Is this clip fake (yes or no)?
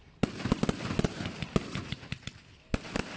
no